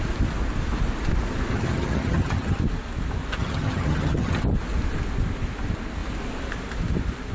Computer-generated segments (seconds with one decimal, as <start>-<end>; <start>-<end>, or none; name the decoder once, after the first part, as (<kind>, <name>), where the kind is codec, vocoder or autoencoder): 1.5-2.6 (vocoder, HiFi-GAN); 3.4-4.4